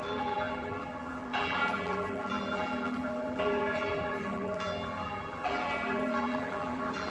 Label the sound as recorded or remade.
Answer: remade